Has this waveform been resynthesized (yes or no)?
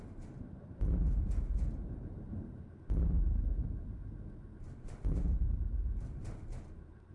yes